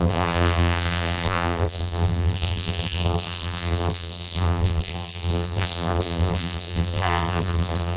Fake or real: fake